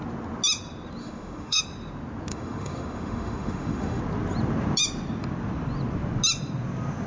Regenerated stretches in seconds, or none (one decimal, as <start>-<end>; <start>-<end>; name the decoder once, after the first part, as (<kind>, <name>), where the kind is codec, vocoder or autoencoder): 1.0-1.6 (autoencoder, DAC-VAE); 2.3-4.0

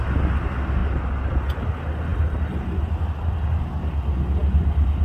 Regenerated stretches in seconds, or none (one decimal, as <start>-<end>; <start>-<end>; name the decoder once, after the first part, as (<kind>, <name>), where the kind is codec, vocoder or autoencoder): none

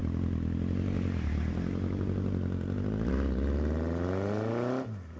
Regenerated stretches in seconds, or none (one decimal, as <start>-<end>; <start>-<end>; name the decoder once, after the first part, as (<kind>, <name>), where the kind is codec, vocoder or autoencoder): none

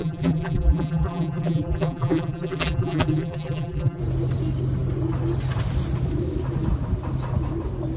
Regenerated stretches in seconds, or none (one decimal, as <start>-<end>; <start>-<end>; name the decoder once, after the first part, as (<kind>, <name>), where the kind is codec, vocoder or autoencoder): 0.0-4.0 (vocoder, BigVGAN v2)

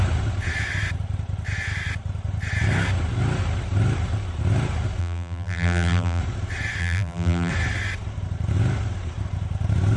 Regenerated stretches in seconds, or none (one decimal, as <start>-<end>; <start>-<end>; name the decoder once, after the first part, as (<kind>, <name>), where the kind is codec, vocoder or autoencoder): 5.0-6.2 (vocoder, BigVGAN v2); 6.8-7.5

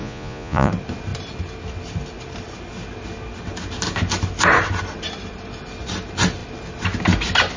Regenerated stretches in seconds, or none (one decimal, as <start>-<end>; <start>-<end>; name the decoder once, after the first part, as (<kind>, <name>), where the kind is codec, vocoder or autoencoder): 0.0-0.7 (vocoder, Vocos)